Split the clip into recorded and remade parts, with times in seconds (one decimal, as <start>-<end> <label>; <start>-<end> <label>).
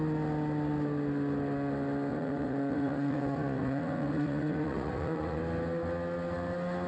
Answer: 0.0-2.1 recorded; 2.1-5.4 remade; 5.4-6.9 recorded